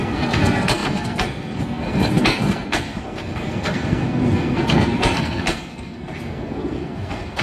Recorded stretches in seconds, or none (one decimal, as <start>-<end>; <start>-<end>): none